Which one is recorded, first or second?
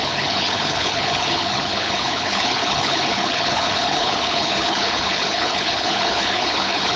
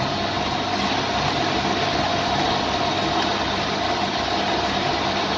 second